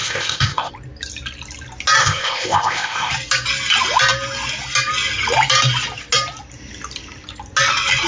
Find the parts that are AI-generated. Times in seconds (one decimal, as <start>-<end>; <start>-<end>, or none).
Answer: 0.0-0.7; 2.0-3.1